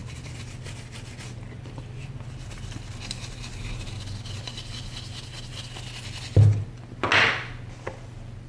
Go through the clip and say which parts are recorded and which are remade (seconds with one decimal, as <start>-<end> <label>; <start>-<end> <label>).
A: 0.0-8.5 recorded